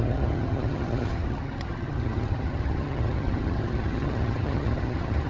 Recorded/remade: remade